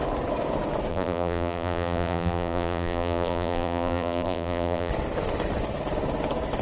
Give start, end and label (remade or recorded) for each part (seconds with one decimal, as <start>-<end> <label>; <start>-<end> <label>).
0.0-0.9 recorded; 0.9-4.9 remade; 4.9-6.6 recorded

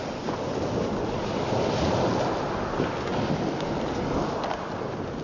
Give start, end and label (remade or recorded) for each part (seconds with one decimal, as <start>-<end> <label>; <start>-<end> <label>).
0.0-5.2 recorded

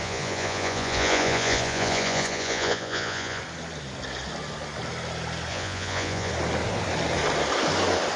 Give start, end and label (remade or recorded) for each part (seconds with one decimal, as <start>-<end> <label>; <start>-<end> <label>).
0.0-3.4 remade; 3.4-5.5 recorded; 5.5-6.3 remade; 6.3-8.2 recorded